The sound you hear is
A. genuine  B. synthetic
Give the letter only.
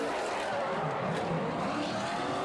A